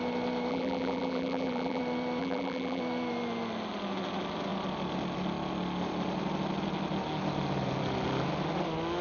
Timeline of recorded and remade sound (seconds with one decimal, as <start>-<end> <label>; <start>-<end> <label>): 0.0-0.5 recorded; 0.5-1.8 remade; 1.8-2.2 recorded; 2.2-2.8 remade; 2.8-9.0 recorded

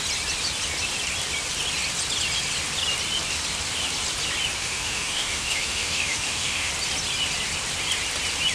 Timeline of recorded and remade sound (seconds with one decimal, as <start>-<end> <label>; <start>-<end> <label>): 0.0-4.6 recorded; 4.6-6.7 remade; 6.7-8.5 recorded

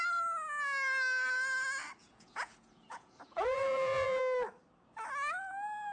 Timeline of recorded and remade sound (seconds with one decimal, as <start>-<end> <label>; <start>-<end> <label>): 0.0-2.0 recorded; 2.0-4.2 remade; 4.2-5.9 recorded

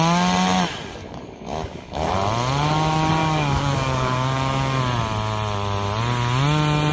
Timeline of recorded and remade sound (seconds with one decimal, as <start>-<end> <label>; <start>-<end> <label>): 0.0-1.0 recorded; 1.0-2.1 remade; 2.1-3.2 recorded; 3.2-4.8 remade; 4.8-6.9 recorded

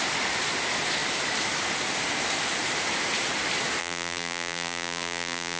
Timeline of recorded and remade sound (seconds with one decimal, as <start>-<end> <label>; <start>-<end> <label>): 0.0-3.8 recorded; 3.8-5.6 remade

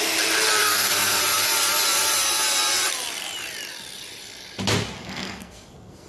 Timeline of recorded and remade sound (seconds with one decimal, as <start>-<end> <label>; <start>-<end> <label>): 0.0-0.6 recorded; 0.6-1.2 remade; 1.2-5.0 recorded; 5.0-6.1 remade

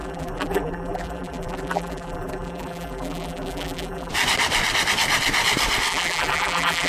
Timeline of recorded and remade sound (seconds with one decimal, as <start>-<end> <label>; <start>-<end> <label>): 0.0-4.1 remade; 4.1-5.9 recorded; 5.9-6.9 remade